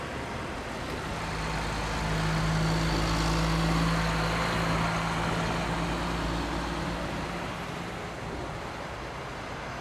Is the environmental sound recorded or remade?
recorded